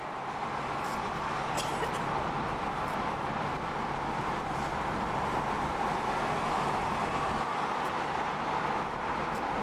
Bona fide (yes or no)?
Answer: yes